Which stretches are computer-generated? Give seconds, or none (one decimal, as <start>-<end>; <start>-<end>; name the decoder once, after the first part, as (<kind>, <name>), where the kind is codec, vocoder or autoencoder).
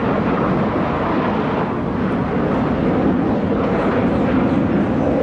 3.1-4.0 (codec, HILCodec)